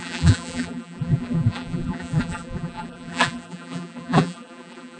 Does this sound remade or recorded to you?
remade